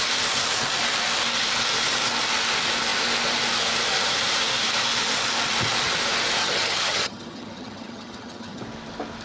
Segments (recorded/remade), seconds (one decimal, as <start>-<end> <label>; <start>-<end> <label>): 0.0-6.4 recorded; 6.4-8.6 remade; 8.6-9.2 recorded